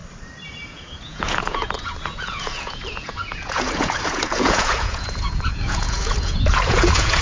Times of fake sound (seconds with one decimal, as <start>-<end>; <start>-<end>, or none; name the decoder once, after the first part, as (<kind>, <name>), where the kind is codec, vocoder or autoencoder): 0.7-7.2 (vocoder, Vocos)